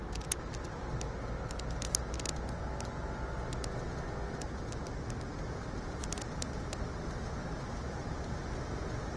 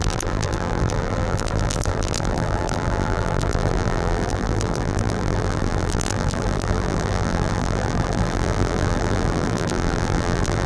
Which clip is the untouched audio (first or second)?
first